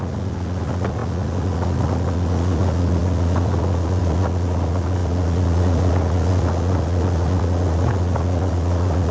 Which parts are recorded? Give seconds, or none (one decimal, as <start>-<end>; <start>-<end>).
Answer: none